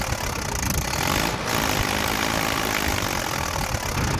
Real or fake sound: real